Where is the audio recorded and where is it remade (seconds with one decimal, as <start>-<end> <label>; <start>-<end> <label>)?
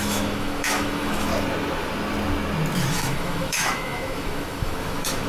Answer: 0.0-1.3 remade; 1.3-2.9 recorded; 2.9-5.3 remade